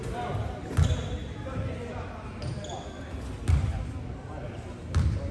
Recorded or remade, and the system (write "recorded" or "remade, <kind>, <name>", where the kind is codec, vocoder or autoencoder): recorded